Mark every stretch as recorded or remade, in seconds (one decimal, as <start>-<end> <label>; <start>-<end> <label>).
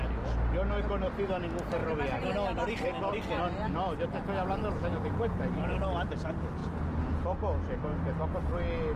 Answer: 0.0-9.0 recorded